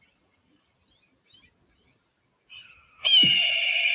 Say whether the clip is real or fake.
real